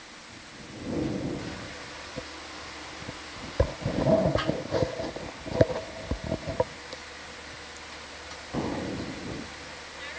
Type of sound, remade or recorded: recorded